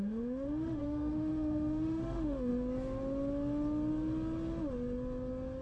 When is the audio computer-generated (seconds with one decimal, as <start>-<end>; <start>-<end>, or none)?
0.0-2.5